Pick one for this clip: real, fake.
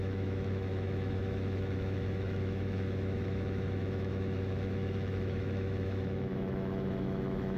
fake